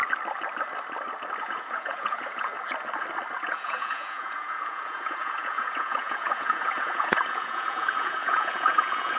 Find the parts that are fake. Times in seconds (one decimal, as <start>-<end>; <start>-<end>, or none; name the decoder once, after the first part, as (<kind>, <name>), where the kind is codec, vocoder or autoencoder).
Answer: 1.4-2.5 (vocoder, Vocos); 3.4-9.2